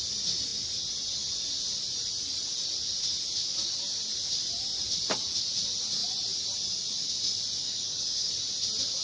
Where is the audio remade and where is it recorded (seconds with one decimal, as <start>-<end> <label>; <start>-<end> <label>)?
0.0-7.6 recorded; 7.6-8.3 remade; 8.3-9.0 recorded